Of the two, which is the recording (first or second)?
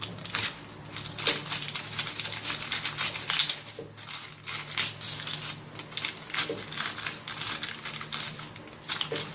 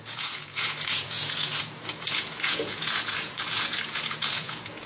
first